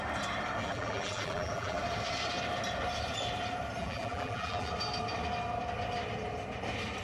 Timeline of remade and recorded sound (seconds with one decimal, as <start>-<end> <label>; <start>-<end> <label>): 0.0-0.6 recorded; 0.6-1.8 remade; 1.8-3.8 recorded; 3.8-4.7 remade; 4.7-7.0 recorded